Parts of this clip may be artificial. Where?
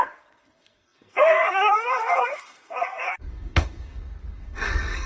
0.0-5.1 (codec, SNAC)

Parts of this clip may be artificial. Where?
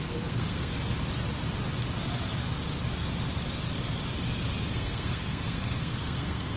0.0-0.7 (codec, SNAC); 4.7-6.6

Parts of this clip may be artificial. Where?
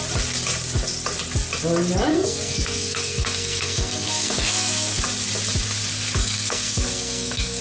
2.1-5.0 (codec, SNAC); 6.2-7.6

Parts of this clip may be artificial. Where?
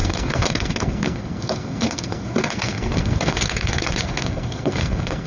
0.0-5.3 (codec, SNAC)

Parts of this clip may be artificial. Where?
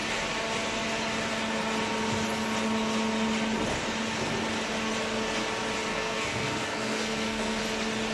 5.9-7.6 (codec, SNAC)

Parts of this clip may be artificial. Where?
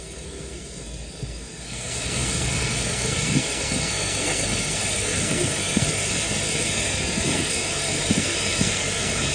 0.0-9.3 (codec, SNAC)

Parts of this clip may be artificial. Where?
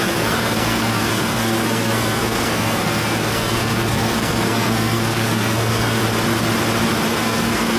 0.0-6.0 (codec, SNAC); 7.1-7.8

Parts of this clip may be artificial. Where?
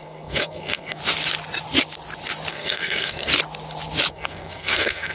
0.0-1.0 (codec, SNAC); 2.5-3.3; 4.1-5.1